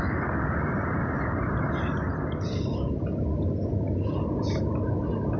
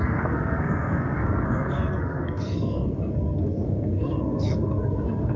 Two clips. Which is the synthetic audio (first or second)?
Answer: second